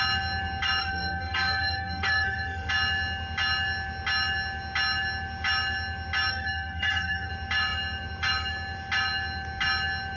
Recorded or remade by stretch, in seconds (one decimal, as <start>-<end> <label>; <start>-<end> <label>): 0.0-0.8 recorded; 0.8-2.7 remade; 2.7-6.3 recorded; 6.3-7.3 remade; 7.3-10.2 recorded